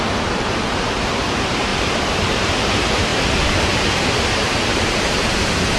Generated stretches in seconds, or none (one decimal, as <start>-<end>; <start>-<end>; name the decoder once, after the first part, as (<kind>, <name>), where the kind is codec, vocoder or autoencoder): 0.0-5.8 (vocoder, BigVGAN v2)